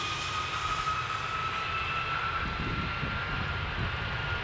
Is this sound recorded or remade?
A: recorded